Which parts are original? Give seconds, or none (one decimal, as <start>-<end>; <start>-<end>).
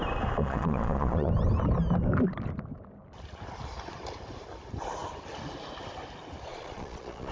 0.0-0.4; 1.3-6.5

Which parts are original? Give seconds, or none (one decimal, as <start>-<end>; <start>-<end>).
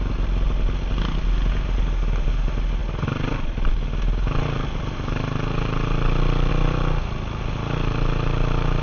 0.0-8.8